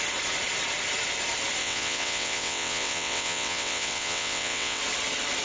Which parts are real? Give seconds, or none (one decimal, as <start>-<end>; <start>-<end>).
0.0-1.6; 4.8-5.4